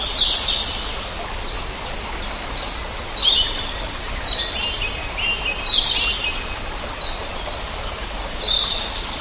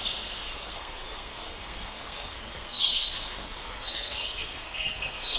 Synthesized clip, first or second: second